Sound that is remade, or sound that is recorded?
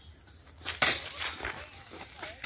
recorded